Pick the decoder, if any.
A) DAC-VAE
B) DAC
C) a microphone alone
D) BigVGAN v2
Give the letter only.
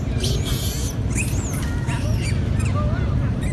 C